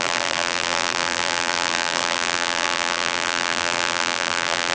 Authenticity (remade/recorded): remade